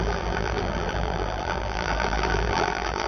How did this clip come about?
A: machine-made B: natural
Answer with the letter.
A